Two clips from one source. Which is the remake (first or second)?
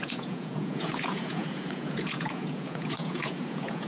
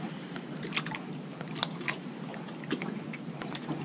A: first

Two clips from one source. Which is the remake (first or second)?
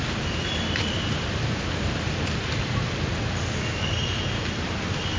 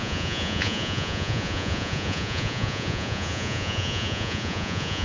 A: second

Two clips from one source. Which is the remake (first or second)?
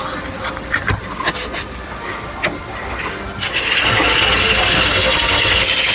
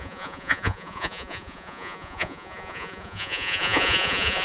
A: second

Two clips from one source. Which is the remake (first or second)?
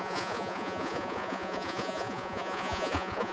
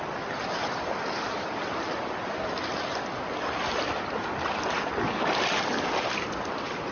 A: first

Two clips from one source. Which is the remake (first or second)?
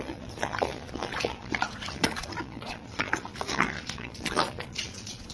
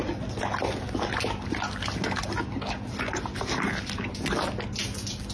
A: first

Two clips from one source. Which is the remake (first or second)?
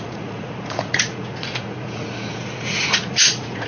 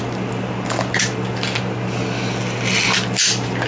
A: first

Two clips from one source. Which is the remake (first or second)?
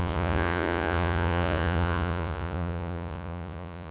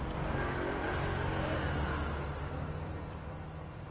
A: first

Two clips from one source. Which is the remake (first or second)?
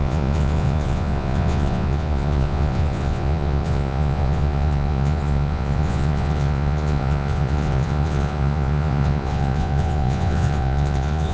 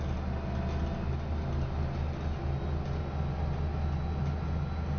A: first